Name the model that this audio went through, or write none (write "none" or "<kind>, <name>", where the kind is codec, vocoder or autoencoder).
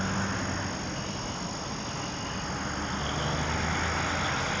none